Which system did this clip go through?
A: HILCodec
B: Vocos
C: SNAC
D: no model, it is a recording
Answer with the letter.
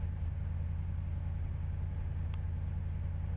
D